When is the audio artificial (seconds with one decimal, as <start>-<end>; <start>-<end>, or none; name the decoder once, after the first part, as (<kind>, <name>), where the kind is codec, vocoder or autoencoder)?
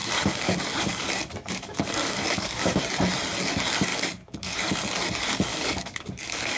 0.0-2.8 (codec, DAC); 3.9-4.7; 5.5-6.6